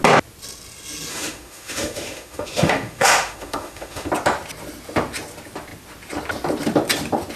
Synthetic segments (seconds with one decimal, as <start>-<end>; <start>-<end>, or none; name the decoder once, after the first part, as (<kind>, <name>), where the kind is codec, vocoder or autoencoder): 1.1-4.1 (autoencoder, DAC-VAE)